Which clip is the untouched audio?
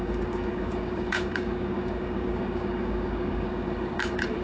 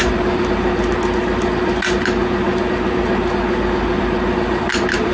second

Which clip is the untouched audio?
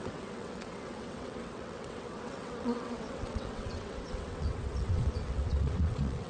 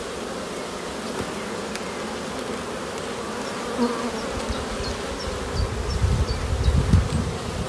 second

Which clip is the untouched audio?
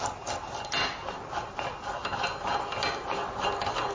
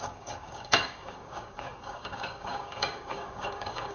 first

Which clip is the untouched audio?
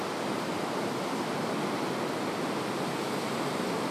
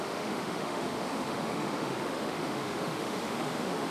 first